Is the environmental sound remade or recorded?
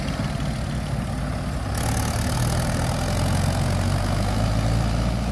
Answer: recorded